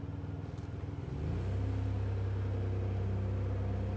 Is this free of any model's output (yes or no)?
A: yes